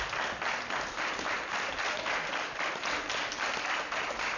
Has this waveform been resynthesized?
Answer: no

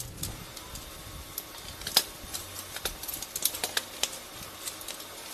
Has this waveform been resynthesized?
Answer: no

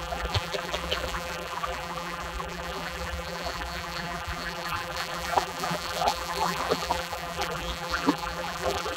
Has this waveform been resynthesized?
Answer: yes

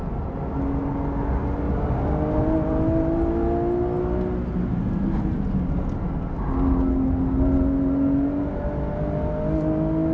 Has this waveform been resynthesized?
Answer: no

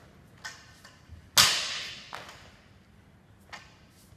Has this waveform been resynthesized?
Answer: no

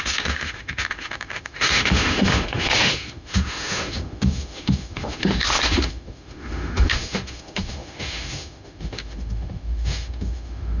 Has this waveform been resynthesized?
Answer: yes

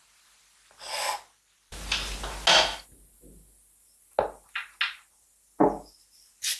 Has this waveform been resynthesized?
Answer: no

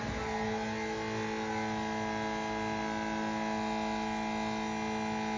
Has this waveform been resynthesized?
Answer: no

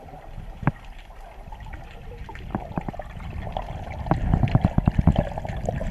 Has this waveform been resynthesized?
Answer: no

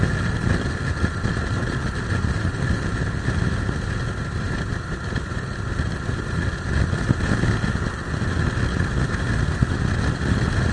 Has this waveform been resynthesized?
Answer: no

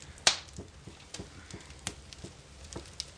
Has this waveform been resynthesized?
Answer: no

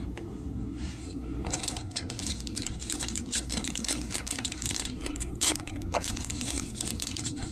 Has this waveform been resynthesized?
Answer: yes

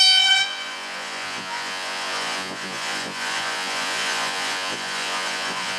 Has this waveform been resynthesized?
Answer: yes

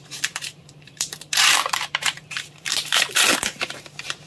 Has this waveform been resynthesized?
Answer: yes